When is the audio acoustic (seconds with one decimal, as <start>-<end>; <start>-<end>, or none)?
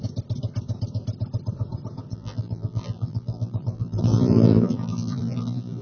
0.0-2.1